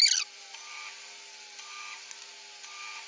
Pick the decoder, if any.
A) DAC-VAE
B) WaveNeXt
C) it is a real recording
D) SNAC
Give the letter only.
C